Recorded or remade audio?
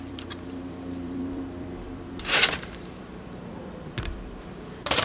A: remade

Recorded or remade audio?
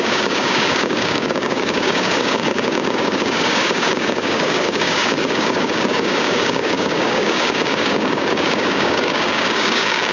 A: remade